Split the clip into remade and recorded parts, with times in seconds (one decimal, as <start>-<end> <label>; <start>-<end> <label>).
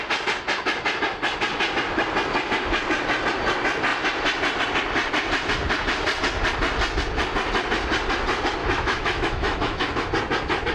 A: 0.0-8.6 recorded; 8.6-10.1 remade; 10.1-10.7 recorded